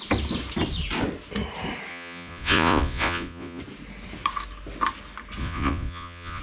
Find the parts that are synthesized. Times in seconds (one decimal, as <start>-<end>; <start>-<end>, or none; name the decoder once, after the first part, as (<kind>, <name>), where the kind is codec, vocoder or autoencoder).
1.9-3.6 (vocoder, Vocos); 5.4-6.4